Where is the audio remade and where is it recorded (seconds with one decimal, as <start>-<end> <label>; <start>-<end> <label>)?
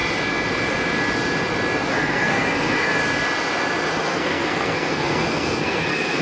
0.0-1.9 recorded; 1.9-3.0 remade; 3.0-4.0 recorded; 4.0-6.2 remade